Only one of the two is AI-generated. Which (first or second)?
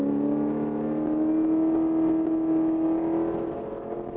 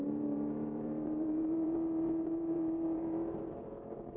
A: second